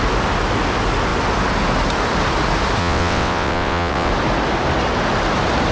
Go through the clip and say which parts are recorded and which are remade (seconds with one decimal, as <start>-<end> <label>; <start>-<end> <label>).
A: 0.0-2.8 recorded; 2.8-4.1 remade; 4.1-5.7 recorded